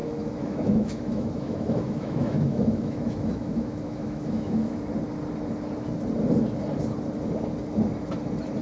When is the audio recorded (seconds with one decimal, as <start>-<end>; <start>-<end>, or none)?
4.8-8.6